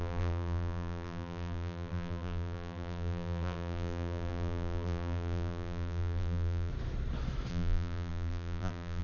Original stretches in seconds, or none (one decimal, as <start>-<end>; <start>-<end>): 6.7-7.5